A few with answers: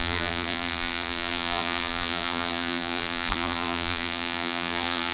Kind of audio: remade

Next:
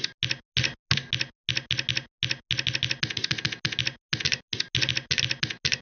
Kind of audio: recorded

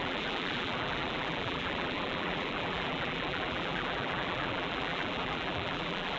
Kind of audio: remade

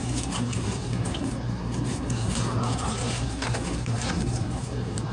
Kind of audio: remade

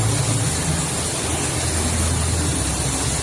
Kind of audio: recorded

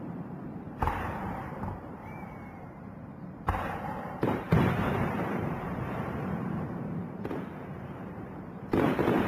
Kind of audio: remade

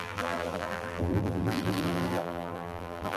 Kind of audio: remade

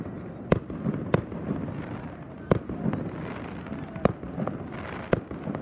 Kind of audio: recorded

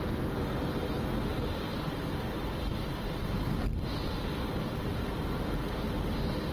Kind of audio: recorded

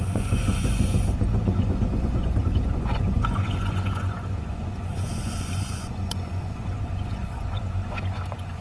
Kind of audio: remade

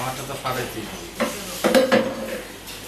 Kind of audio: recorded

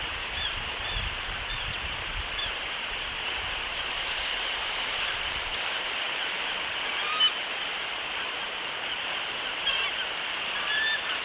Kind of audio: remade